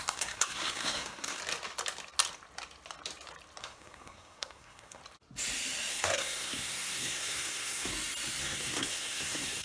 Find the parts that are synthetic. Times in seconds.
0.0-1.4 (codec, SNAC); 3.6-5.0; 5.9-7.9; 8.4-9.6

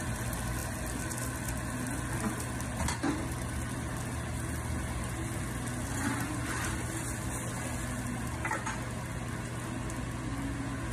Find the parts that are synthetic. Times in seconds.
none